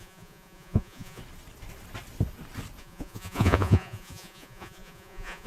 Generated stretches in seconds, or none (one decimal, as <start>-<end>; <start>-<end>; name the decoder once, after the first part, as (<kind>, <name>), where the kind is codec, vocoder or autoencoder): 0.0-1.2 (vocoder, Vocos); 2.8-5.5